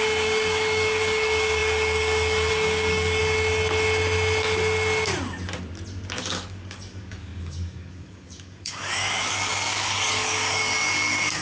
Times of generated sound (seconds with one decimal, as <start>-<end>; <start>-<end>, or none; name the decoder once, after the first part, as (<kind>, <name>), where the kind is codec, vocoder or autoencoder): 0.0-3.2 (codec, DAC); 6.2-11.4